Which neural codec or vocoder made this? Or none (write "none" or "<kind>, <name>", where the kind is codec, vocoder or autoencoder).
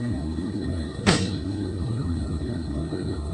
codec, SNAC